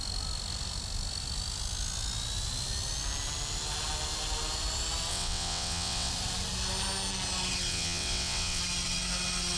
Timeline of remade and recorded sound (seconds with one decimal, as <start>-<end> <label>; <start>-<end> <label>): 0.0-5.1 recorded; 5.1-6.1 remade; 6.1-7.7 recorded; 7.7-8.6 remade; 8.6-9.6 recorded